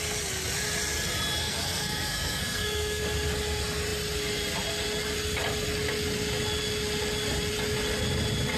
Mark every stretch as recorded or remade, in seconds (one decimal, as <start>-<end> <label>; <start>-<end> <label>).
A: 0.0-1.4 recorded; 1.4-3.0 remade; 3.0-8.6 recorded